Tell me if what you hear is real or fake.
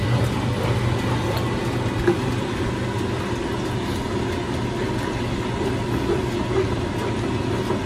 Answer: real